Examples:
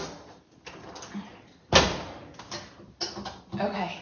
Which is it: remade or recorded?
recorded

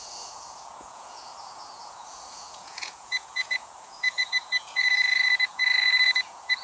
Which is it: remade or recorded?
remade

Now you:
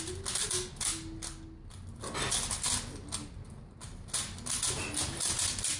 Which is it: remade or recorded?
recorded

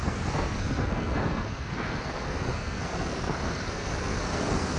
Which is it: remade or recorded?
remade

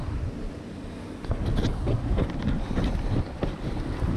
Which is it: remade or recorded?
recorded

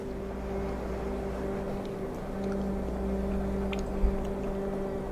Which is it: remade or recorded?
recorded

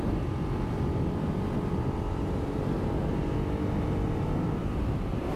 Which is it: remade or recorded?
recorded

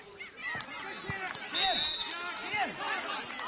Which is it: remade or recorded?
recorded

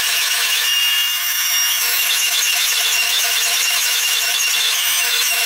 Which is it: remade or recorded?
remade